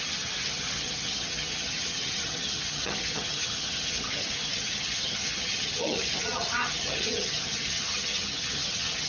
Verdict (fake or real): fake